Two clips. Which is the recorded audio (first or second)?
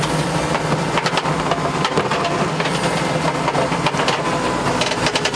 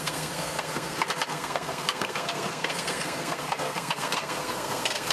first